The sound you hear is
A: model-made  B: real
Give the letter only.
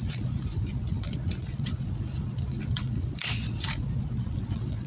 A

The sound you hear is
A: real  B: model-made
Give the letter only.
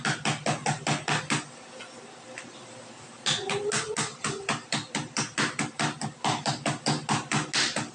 A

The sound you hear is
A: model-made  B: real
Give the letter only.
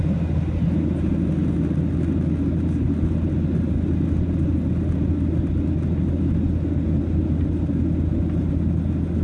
B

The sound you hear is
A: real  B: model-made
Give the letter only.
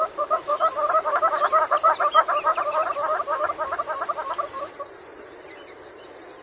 A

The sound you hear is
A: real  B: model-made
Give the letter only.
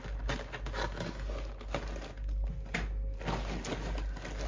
A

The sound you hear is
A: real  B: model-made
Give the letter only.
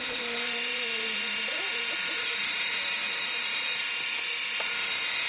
B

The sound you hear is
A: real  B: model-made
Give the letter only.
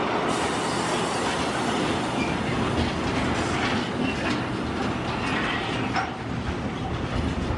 A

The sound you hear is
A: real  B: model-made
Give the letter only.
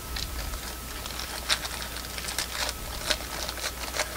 A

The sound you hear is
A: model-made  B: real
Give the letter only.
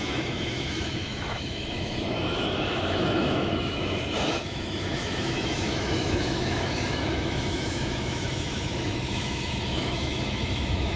A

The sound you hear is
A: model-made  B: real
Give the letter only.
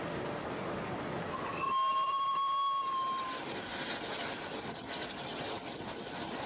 B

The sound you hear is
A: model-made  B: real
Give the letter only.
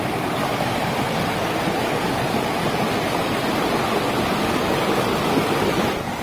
B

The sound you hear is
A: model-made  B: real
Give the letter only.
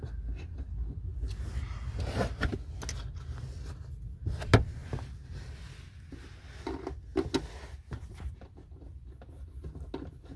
B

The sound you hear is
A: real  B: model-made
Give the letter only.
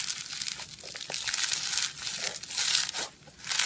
A